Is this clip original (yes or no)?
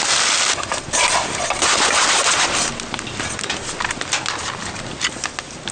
yes